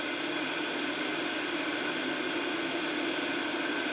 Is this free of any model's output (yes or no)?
yes